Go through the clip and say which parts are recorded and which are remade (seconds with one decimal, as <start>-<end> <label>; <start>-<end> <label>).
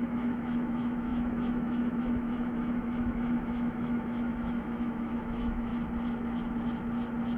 0.0-5.7 remade; 5.7-7.4 recorded